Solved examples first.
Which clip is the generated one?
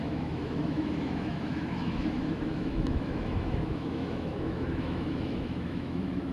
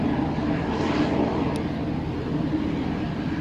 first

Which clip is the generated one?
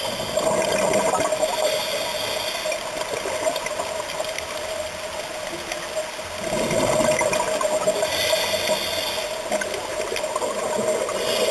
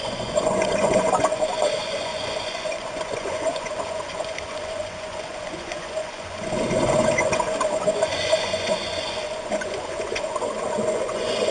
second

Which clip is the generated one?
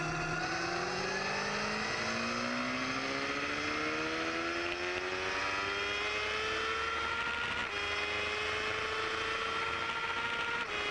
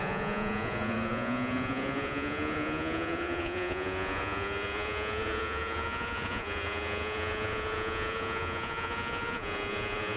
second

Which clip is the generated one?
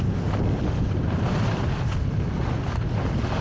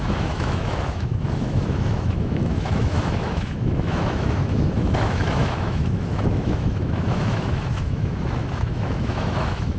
second